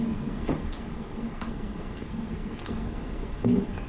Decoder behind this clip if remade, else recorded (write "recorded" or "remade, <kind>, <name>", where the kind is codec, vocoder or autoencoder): remade, codec, SNAC